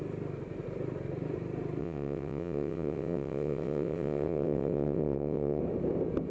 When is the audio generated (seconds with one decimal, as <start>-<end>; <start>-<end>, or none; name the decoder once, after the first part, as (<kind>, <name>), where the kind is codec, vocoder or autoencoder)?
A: 1.8-5.6 (vocoder, WaveNeXt)